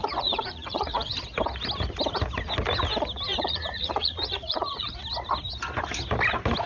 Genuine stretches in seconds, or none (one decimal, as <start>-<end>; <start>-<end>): 1.2-3.3; 5.0-6.7